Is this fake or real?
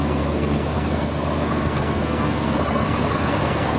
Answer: fake